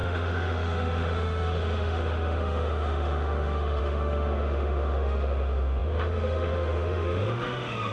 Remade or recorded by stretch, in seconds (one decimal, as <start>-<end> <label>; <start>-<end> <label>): 0.0-7.9 remade